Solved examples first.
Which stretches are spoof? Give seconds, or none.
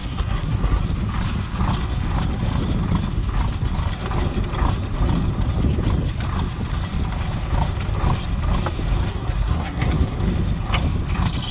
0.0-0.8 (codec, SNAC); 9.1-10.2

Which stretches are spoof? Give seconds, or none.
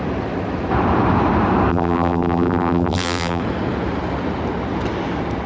1.7-3.4 (vocoder, BigVGAN v2)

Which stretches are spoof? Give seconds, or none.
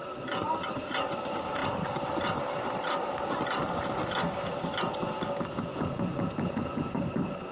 5.7-6.8 (vocoder, Vocos)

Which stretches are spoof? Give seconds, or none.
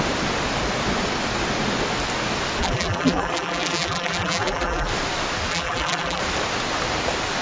2.6-4.9 (vocoder, BigVGAN v2); 5.5-6.2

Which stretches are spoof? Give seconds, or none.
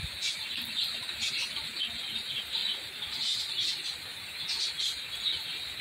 none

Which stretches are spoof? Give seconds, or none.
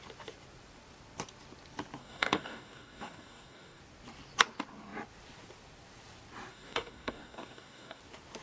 2.0-3.8 (codec, DAC); 6.5-8.0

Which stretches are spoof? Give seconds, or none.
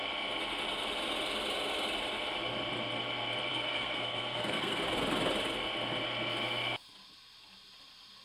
3.5-4.8 (codec, SNAC)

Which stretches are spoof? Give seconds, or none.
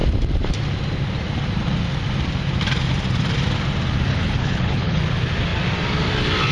4.1-5.0 (codec, HILCodec)